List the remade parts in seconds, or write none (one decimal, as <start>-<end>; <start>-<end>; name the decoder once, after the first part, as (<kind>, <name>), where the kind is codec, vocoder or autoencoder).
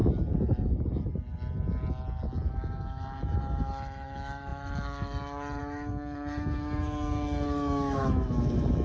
2.5-8.8 (autoencoder, DAC-VAE)